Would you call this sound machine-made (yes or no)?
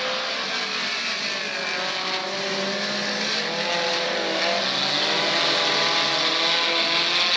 no